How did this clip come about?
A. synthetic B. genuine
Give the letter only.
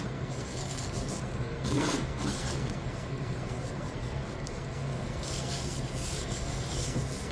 A